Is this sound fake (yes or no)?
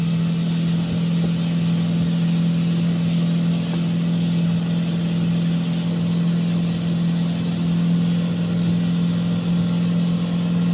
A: no